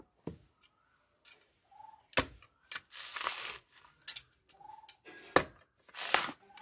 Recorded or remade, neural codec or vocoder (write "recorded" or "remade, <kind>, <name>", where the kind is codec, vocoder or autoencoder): recorded